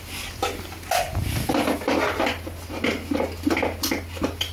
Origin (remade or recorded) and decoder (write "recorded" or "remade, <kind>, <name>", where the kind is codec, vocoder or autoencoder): recorded